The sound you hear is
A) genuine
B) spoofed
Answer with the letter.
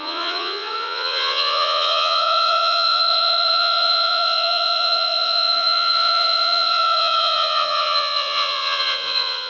B